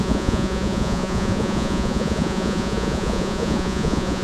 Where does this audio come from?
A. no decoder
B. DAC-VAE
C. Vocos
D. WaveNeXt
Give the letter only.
C